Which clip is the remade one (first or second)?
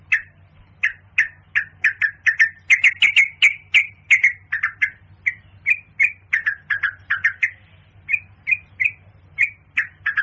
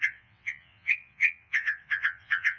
second